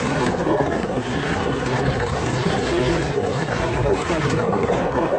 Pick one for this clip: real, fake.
fake